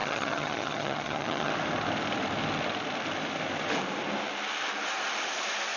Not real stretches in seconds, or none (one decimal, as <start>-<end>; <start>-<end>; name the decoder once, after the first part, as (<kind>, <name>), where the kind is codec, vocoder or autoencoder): 0.0-1.5 (vocoder, HiFi-GAN)